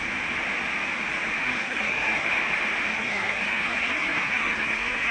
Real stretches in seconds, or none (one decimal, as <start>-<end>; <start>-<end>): 0.0-1.4; 2.3-2.9